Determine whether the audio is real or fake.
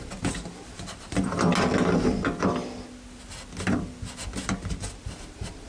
real